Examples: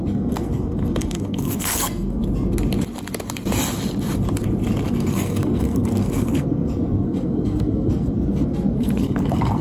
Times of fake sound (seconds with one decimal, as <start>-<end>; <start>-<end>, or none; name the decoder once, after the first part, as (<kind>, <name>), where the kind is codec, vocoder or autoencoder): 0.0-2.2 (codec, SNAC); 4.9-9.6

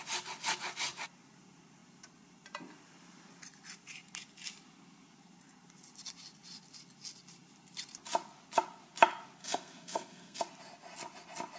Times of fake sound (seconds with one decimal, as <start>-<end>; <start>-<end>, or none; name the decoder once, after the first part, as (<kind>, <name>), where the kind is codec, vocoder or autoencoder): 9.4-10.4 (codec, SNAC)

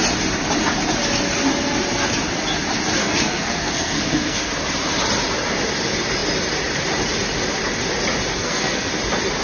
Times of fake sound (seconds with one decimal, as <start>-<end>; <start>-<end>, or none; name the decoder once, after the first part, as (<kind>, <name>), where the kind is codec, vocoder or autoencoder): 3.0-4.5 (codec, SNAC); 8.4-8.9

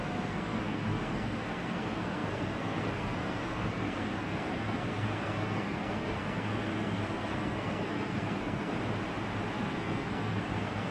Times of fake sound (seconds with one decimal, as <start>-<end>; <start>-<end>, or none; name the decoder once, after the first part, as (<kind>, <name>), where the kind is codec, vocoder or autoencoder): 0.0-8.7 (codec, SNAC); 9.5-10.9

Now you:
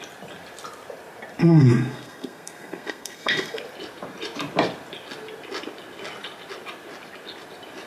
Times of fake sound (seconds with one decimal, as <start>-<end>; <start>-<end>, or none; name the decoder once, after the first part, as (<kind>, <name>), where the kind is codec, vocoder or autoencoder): 1.4-3.6 (codec, SNAC)

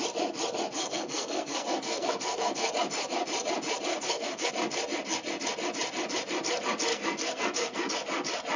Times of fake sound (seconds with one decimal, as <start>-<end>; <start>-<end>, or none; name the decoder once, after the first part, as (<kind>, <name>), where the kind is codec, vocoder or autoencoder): 0.8-2.7 (codec, SNAC); 3.9-4.5; 6.9-7.9